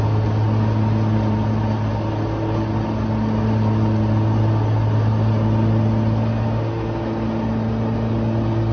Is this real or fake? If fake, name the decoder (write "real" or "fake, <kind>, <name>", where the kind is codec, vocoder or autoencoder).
real